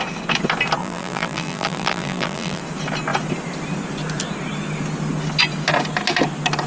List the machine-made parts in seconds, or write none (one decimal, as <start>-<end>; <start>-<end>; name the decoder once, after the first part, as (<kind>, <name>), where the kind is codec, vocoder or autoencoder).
0.8-2.6 (vocoder, BigVGAN v2)